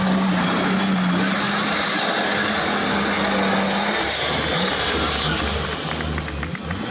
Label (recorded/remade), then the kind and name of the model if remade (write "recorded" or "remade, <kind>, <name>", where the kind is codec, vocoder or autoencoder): recorded